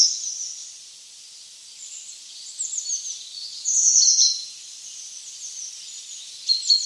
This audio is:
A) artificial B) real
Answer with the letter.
B